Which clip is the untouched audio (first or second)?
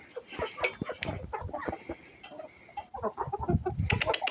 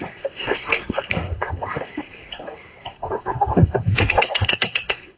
first